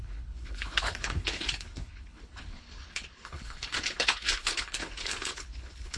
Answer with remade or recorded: remade